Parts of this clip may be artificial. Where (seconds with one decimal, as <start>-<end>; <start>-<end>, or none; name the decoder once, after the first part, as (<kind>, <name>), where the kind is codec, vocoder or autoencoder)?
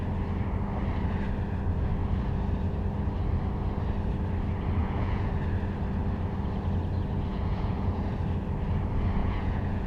4.8-5.3 (vocoder, Vocos); 7.3-8.1; 9.2-9.9